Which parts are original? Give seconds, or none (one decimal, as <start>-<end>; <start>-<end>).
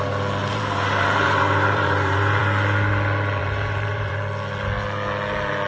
0.0-0.4; 2.4-3.4; 4.2-5.7